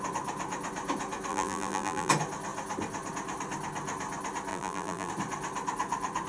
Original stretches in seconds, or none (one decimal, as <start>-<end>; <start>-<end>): 0.0-1.3; 2.1-4.5; 5.1-6.3